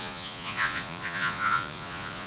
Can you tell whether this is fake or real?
fake